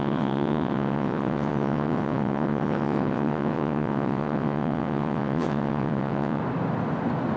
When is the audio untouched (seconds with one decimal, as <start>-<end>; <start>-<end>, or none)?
6.4-7.4